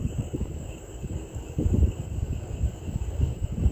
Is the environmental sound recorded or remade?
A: remade